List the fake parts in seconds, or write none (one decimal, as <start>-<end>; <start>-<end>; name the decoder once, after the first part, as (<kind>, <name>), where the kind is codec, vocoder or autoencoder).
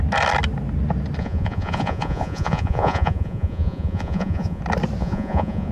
1.2-4.6 (vocoder, Vocos); 5.0-5.7